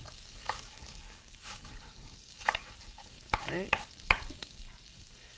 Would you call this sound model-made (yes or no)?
yes